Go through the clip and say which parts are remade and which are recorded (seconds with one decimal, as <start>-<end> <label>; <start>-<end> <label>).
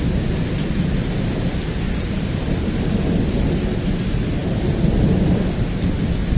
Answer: 0.0-6.4 recorded